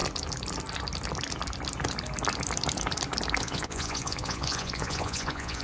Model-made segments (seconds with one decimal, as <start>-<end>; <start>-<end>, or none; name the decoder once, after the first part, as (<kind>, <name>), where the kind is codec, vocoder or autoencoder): 3.4-5.6 (vocoder, Vocos)